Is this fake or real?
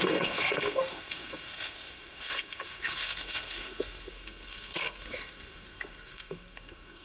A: fake